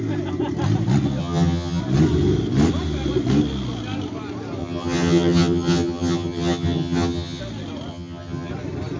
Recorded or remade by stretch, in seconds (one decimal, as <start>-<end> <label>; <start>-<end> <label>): 0.0-1.2 recorded; 1.2-1.8 remade; 1.8-4.6 recorded; 4.6-7.4 remade; 7.4-7.9 recorded; 7.9-8.5 remade; 8.5-9.0 recorded